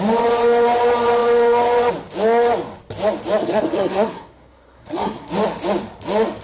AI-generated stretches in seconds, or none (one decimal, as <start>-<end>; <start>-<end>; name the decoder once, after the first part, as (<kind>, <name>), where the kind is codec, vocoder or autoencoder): 3.4-5.3 (codec, SNAC)